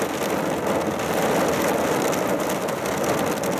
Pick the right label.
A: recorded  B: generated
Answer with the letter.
A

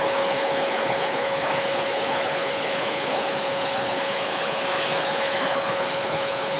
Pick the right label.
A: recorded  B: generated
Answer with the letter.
B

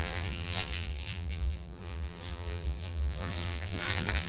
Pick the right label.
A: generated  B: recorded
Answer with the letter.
A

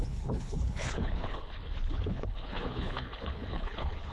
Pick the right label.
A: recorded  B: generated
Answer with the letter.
B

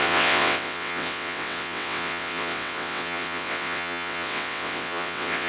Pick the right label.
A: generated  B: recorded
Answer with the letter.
A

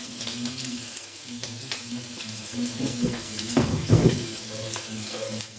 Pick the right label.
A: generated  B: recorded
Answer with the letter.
A